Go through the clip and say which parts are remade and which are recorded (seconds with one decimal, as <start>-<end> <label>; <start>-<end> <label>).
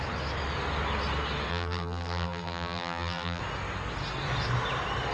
0.0-1.5 recorded; 1.5-3.4 remade; 3.4-5.1 recorded